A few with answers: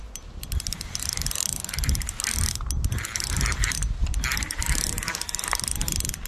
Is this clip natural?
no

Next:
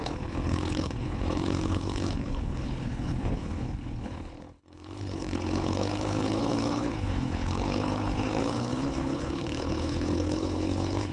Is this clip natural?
no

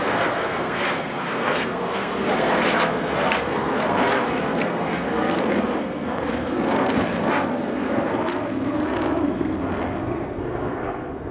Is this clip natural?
no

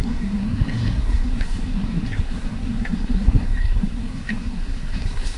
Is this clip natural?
no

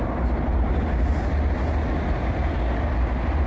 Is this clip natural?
yes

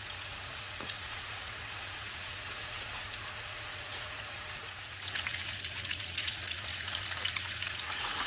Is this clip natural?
no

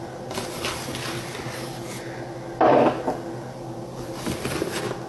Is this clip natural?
yes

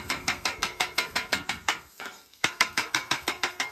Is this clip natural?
no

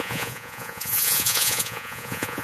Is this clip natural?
no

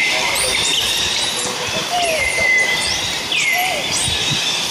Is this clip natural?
no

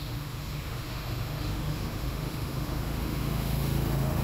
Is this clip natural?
no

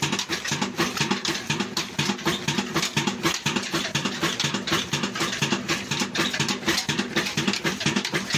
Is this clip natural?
yes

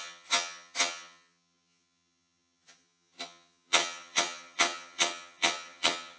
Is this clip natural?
no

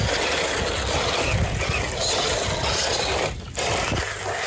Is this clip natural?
yes